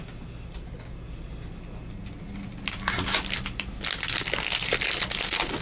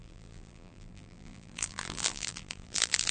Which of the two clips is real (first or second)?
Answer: first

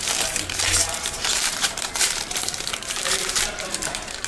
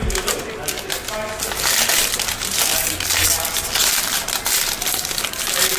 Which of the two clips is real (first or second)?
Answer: second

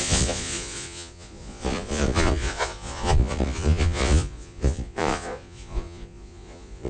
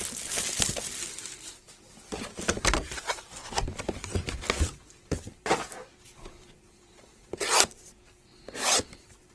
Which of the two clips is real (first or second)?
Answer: second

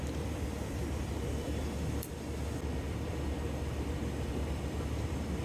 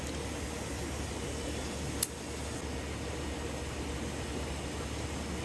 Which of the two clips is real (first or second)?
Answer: second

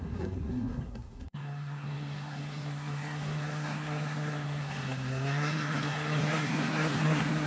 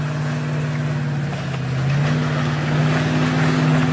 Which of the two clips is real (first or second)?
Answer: second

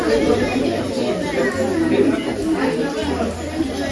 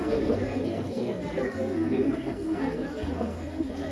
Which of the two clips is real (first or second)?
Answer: first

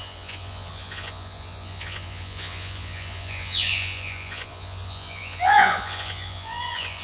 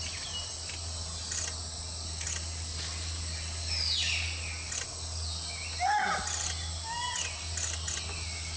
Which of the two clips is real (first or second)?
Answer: second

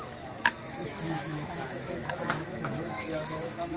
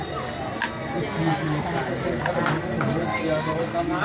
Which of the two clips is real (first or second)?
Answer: second